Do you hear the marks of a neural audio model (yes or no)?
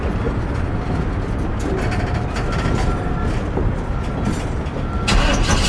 no